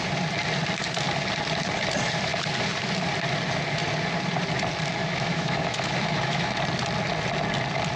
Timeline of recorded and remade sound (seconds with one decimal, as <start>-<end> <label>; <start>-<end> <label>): 0.0-4.9 recorded; 4.9-6.6 remade; 6.6-8.0 recorded